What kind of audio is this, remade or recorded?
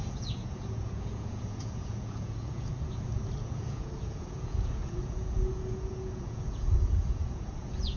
remade